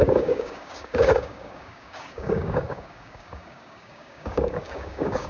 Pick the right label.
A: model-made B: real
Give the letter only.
A